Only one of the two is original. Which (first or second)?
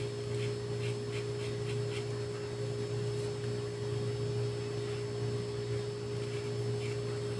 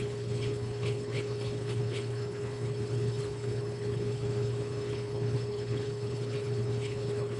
first